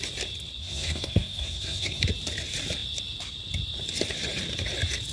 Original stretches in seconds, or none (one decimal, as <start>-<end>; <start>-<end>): 0.0-0.6; 2.0-5.1